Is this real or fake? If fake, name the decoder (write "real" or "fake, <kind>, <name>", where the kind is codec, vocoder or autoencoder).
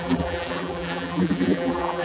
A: fake, vocoder, BigVGAN v2